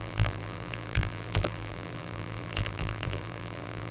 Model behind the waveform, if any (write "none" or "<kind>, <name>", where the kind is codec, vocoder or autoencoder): vocoder, BigVGAN v2